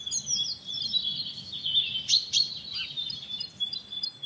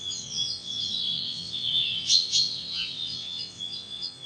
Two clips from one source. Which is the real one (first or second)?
first